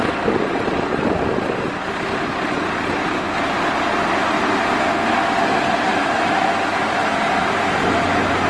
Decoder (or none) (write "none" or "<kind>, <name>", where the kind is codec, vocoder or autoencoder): none